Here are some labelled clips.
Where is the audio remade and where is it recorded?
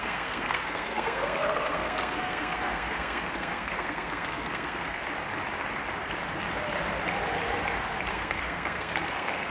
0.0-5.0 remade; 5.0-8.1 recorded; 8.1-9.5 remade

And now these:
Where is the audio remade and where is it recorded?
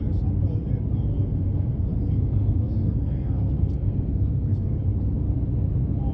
0.0-1.1 recorded; 1.1-4.8 remade; 4.8-6.1 recorded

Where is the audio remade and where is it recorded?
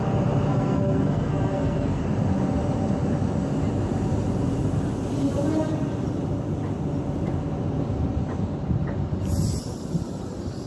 0.0-0.5 recorded; 0.5-2.0 remade; 2.0-10.7 recorded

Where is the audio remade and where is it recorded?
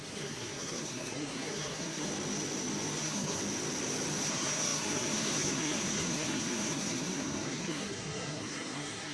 0.0-2.1 remade; 2.1-3.0 recorded; 3.0-3.4 remade; 3.4-4.3 recorded; 4.3-9.1 remade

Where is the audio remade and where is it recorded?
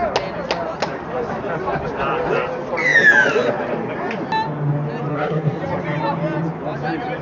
0.0-5.1 recorded; 5.1-5.6 remade; 5.6-7.2 recorded